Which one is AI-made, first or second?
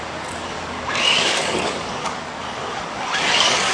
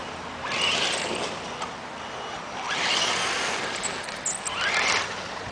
first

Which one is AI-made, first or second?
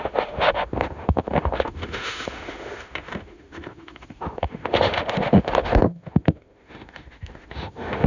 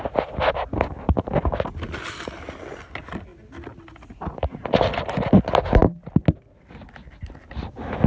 first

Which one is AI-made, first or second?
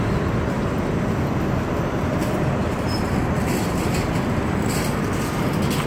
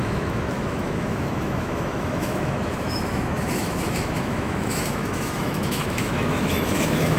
second